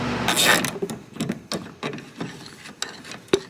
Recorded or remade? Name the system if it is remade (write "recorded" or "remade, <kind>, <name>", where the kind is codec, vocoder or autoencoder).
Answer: recorded